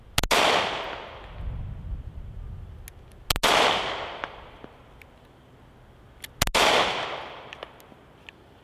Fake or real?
real